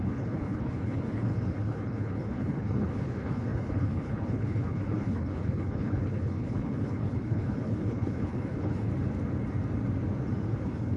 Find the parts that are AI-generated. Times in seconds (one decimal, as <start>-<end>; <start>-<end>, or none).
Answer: 0.0-8.9; 10.6-11.0